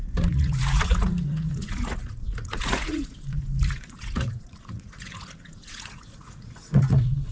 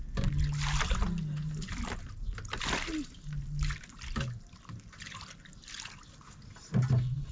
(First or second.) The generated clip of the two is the first